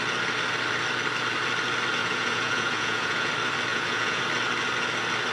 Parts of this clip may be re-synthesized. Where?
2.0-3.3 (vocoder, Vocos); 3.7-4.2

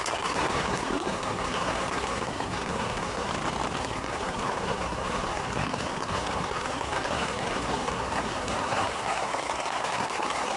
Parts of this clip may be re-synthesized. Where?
0.0-3.3 (codec, SNAC); 3.8-10.6

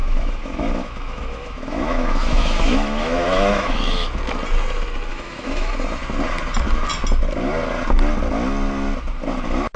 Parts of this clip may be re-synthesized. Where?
0.0-4.2 (autoencoder, DAC-VAE); 5.1-5.7

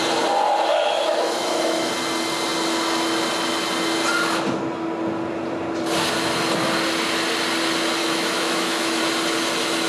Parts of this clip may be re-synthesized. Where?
0.7-1.9 (autoencoder, DAC-VAE); 8.0-9.0

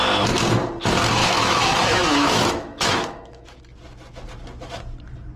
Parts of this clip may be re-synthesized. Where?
1.2-3.6 (autoencoder, DAC-VAE)